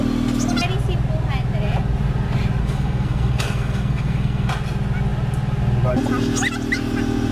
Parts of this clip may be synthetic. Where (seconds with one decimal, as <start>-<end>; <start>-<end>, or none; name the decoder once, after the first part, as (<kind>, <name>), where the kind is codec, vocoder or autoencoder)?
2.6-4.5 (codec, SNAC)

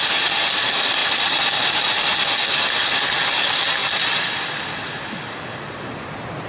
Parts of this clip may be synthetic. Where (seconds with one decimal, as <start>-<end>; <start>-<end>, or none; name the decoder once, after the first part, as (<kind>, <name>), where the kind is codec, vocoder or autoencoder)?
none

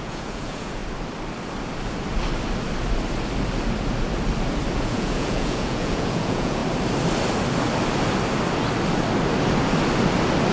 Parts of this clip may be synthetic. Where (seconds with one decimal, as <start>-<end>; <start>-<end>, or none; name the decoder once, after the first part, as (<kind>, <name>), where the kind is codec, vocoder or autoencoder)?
0.0-0.8 (vocoder, Vocos); 4.7-6.6